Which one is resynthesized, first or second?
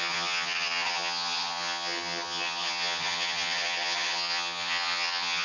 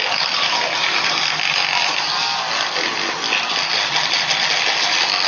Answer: first